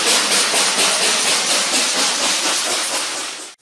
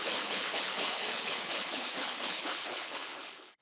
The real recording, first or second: first